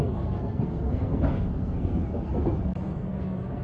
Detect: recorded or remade remade